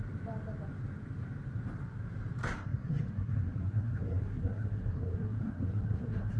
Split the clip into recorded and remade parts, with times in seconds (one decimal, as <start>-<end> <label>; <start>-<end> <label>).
0.0-2.4 recorded; 2.4-6.4 remade

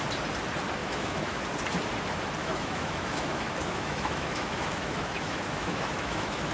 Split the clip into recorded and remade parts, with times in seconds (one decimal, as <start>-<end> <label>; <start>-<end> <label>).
0.0-0.8 recorded; 0.8-1.4 remade; 1.4-2.4 recorded; 2.4-6.5 remade

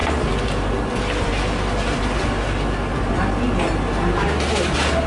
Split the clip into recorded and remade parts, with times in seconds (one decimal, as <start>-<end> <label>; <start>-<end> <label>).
0.0-5.1 recorded

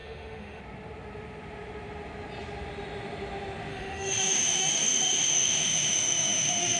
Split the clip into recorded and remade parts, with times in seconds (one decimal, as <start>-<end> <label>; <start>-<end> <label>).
0.0-0.6 remade; 0.6-3.7 recorded; 3.7-6.8 remade

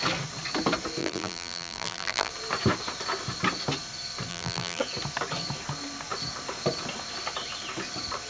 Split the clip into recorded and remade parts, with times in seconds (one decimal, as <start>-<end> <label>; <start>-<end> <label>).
0.0-1.0 recorded; 1.0-2.3 remade; 2.3-4.3 recorded; 4.3-4.8 remade; 4.8-8.3 recorded

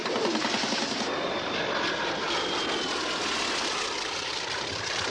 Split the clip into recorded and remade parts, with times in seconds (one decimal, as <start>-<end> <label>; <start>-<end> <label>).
0.0-5.1 recorded